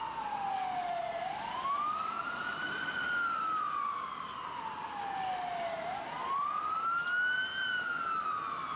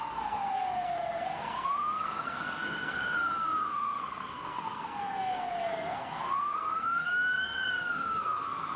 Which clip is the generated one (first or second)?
second